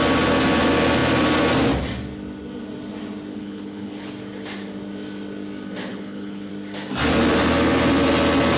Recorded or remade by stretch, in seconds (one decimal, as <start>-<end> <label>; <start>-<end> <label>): 0.0-3.3 recorded; 3.3-4.1 remade; 4.1-5.9 recorded; 5.9-6.5 remade; 6.5-8.6 recorded